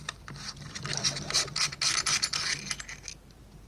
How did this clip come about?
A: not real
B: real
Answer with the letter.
B